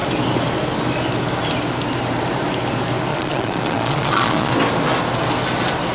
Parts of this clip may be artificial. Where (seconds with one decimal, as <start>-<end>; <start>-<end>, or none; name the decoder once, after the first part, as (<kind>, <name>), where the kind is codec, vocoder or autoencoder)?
3.1-4.5 (vocoder, Vocos)